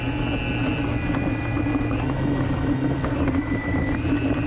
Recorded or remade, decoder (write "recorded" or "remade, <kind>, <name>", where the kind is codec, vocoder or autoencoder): recorded